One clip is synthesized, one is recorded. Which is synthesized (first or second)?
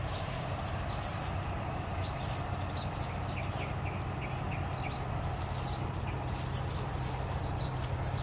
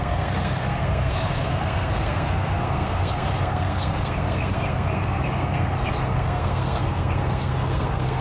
second